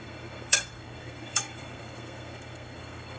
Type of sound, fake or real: fake